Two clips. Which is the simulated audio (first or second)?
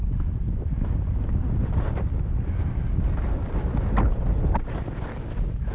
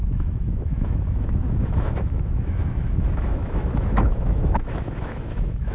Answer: second